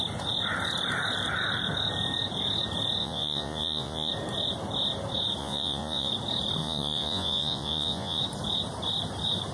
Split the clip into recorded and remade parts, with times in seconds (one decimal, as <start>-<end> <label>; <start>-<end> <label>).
0.0-3.0 recorded; 3.0-4.1 remade; 4.1-5.4 recorded; 5.4-6.1 remade; 6.1-6.6 recorded; 6.6-8.2 remade; 8.2-9.5 recorded